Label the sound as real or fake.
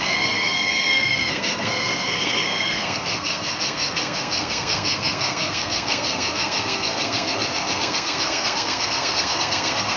fake